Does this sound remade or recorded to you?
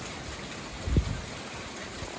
recorded